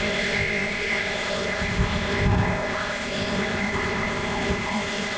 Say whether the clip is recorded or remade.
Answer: remade